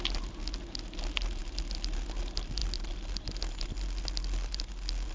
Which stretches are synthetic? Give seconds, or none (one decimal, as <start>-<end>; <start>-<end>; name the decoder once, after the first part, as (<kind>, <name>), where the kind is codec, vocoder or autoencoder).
none